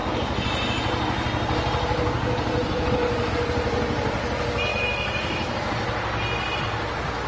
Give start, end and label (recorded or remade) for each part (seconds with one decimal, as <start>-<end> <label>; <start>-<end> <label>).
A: 0.0-4.7 recorded; 4.7-5.7 remade; 5.7-7.3 recorded